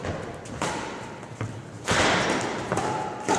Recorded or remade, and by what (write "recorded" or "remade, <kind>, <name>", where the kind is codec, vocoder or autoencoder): recorded